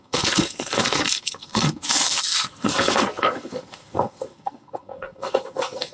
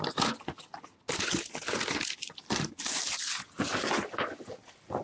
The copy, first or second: first